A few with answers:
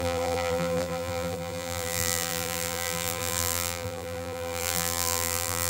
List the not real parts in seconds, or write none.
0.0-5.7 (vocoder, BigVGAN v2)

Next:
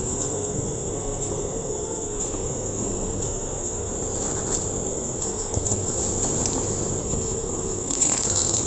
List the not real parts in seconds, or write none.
0.0-3.9 (codec, SNAC); 4.9-6.0; 7.0-8.7

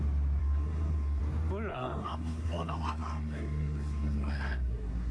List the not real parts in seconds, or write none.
0.4-1.2 (codec, SNAC); 1.7-5.1

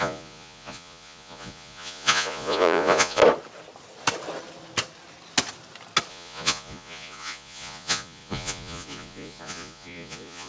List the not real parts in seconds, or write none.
0.0-3.2 (vocoder, Vocos); 6.1-10.5

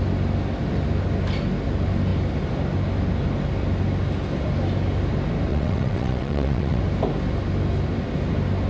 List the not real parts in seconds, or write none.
5.5-6.8 (vocoder, WaveNeXt)

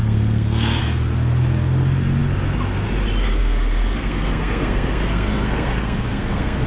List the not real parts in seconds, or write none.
0.0-0.8 (codec, SNAC); 3.4-6.7